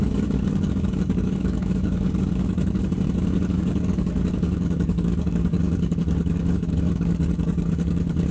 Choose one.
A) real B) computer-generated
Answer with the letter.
B